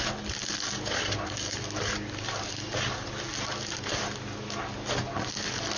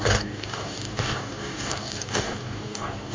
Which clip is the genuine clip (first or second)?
first